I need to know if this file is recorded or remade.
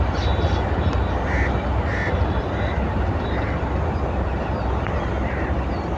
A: recorded